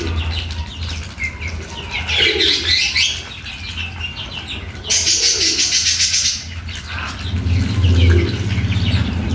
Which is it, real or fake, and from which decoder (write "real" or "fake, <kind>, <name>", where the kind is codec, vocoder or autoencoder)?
real